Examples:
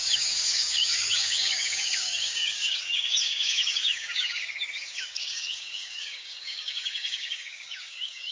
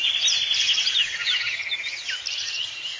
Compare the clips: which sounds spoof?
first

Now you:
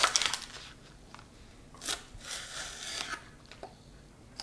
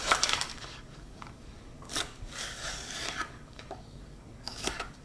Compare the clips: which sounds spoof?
second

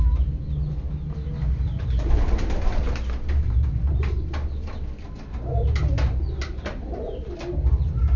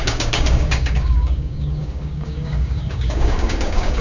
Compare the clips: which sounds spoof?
second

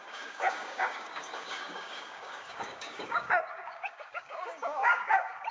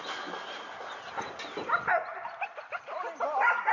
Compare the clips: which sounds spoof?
first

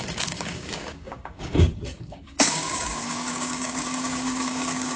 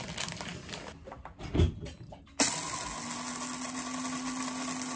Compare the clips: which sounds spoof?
first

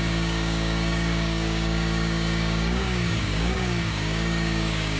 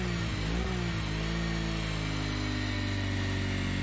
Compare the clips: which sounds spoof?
first